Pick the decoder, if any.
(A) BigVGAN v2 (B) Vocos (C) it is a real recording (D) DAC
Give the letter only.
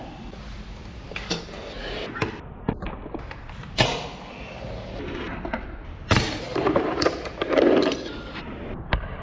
A